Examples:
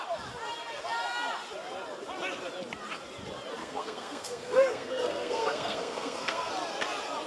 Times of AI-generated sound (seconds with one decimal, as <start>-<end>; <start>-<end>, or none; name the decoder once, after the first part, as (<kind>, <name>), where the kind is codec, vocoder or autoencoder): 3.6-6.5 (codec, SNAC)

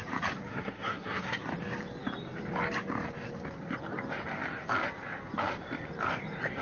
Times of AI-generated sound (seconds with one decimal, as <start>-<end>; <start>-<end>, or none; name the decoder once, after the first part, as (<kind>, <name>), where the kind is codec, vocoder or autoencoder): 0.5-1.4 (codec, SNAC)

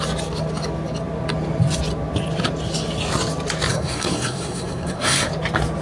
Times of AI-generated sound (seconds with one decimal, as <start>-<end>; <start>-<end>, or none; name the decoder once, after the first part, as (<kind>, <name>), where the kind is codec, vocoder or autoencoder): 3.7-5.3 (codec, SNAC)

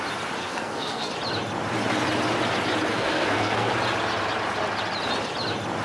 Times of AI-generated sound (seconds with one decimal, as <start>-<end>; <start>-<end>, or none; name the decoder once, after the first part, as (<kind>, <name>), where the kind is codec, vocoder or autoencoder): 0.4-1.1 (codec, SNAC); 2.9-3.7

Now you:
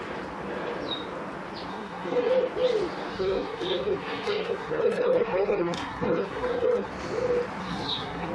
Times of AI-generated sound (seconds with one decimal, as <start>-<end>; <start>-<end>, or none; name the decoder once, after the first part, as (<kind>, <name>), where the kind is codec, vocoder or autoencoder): 1.7-2.3 (codec, SNAC); 3.1-6.9; 7.6-8.3

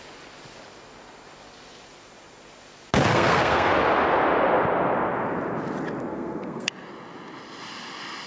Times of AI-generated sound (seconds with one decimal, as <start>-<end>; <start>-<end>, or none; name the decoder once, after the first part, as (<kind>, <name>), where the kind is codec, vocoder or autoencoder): 3.1-3.7 (codec, SNAC); 6.1-6.7

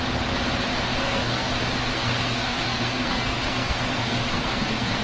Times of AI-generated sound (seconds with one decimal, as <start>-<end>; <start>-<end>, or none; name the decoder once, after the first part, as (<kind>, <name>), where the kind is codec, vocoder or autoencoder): 1.0-1.5 (codec, SNAC); 1.9-5.0

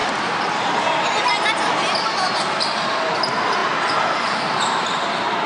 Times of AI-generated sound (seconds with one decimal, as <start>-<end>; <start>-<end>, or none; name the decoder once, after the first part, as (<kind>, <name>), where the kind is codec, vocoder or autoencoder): none